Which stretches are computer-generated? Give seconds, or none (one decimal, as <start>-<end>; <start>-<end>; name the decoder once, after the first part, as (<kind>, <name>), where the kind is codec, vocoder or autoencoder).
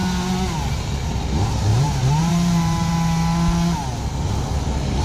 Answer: 1.7-2.9 (vocoder, BigVGAN v2)